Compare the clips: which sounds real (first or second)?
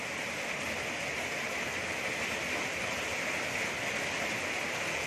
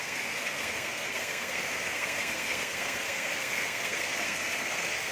first